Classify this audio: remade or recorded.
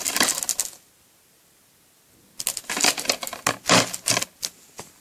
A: recorded